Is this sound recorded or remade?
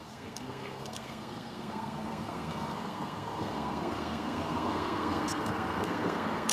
remade